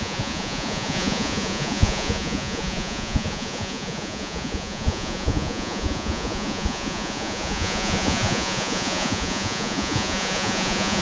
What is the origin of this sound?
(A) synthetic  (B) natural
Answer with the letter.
A